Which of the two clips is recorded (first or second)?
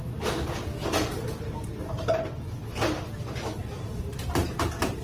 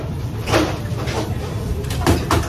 first